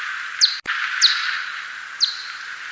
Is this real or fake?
real